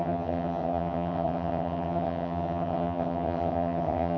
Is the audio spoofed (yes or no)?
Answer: yes